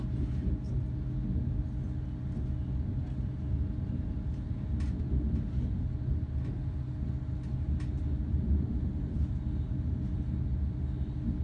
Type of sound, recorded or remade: recorded